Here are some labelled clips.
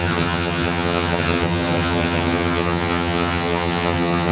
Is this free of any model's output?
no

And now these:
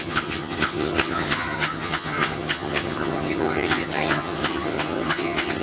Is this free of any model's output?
no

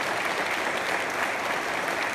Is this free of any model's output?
yes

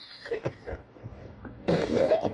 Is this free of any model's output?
no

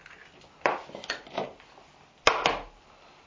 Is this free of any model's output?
yes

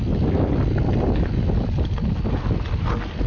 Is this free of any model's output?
yes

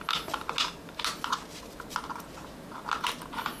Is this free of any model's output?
yes